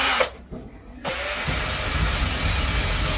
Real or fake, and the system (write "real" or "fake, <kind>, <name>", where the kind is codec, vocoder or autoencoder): real